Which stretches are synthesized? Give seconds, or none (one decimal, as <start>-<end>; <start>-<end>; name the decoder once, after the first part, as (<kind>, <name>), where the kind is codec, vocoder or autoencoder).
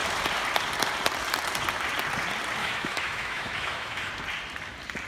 2.6-4.1 (autoencoder, DAC-VAE)